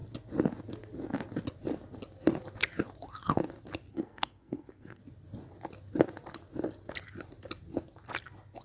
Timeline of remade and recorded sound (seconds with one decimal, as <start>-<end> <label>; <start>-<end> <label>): 0.0-3.9 recorded; 3.9-5.0 remade; 5.0-8.6 recorded